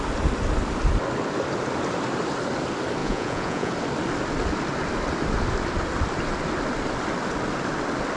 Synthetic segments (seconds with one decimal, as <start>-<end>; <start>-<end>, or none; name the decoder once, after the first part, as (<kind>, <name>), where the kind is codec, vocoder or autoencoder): 3.0-3.7 (vocoder, Vocos)